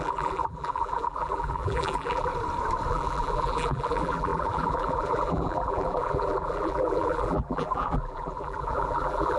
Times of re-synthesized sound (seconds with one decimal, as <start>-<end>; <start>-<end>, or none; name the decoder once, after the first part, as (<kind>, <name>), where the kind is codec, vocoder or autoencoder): 0.0-2.3 (vocoder, BigVGAN v2); 2.9-9.4